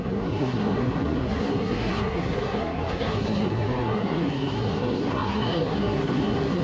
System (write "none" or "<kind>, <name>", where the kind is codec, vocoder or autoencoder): codec, SNAC